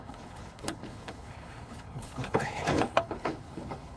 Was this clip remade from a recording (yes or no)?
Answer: yes